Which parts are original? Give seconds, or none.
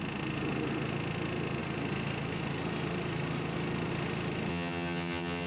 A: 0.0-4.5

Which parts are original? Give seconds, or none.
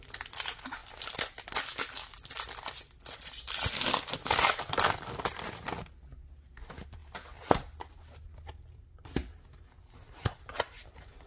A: 0.0-11.3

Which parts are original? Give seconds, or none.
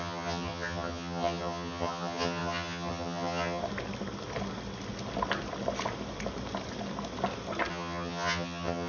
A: 3.6-7.7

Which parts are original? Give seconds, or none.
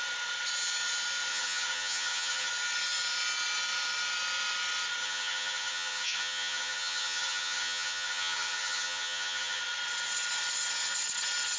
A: 0.0-1.3; 2.5-5.0; 9.6-11.6